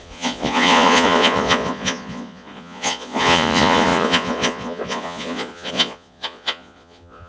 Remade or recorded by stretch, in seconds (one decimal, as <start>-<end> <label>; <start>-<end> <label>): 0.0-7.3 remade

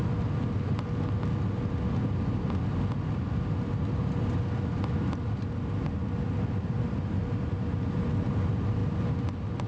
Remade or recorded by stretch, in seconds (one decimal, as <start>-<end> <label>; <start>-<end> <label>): 0.0-9.7 recorded

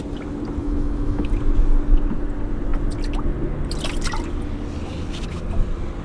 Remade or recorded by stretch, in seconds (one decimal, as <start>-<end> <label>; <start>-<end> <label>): 0.0-0.6 recorded; 0.6-1.3 remade; 1.3-6.0 recorded

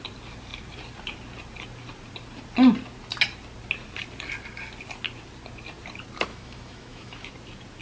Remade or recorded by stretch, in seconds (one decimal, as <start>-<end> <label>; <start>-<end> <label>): 0.0-6.3 recorded; 6.3-7.3 remade; 7.3-7.8 recorded

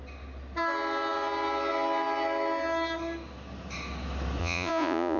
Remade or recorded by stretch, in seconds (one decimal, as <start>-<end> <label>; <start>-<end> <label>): 0.0-4.4 recorded; 4.4-5.2 remade